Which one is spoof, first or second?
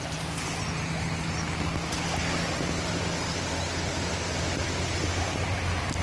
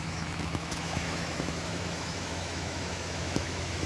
second